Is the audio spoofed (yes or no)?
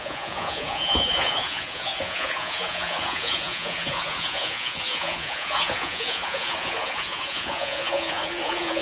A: yes